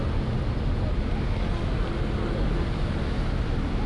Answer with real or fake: real